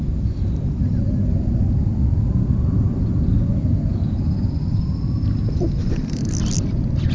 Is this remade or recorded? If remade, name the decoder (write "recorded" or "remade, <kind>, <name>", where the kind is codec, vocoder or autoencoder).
recorded